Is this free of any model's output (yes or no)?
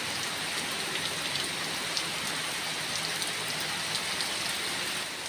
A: yes